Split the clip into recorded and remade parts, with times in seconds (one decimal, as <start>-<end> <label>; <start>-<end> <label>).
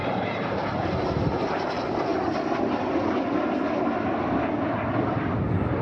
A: 0.0-2.1 remade; 2.1-5.8 recorded